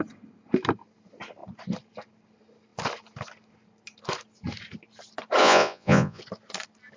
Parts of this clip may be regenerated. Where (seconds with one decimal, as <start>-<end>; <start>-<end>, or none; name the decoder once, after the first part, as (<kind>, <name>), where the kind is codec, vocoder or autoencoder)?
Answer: 5.4-6.2 (vocoder, Vocos)